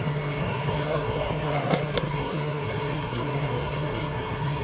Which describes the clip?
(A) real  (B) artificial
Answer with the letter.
B